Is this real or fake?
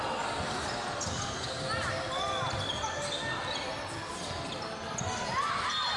real